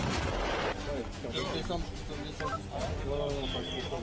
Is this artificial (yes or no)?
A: no